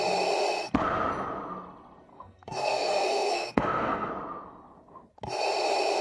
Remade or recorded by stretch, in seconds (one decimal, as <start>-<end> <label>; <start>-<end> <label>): 0.0-2.1 recorded; 2.1-4.1 remade; 4.1-6.0 recorded